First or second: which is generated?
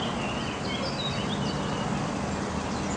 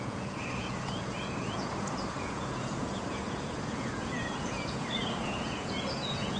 second